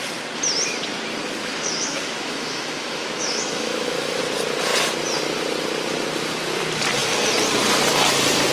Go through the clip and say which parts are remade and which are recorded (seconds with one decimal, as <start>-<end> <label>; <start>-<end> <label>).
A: 0.0-1.4 recorded; 1.4-4.2 remade; 4.2-8.5 recorded